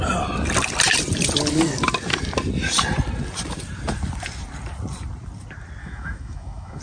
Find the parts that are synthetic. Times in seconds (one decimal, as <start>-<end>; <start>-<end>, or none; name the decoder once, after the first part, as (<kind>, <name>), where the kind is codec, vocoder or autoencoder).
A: 5.8-6.8 (autoencoder, DAC-VAE)